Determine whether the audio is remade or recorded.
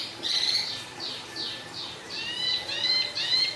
remade